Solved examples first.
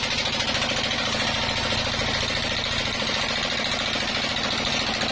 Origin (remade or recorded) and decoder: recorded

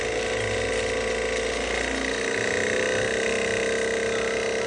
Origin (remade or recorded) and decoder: recorded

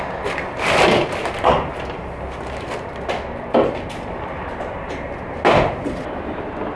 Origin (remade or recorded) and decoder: recorded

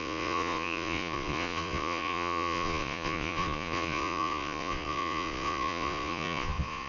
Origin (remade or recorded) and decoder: remade, vocoder, Vocos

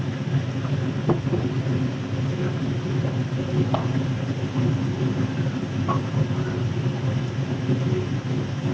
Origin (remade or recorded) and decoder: recorded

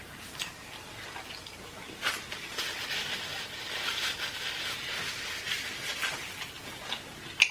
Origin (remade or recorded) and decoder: recorded